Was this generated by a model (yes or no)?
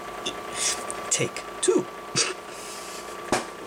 no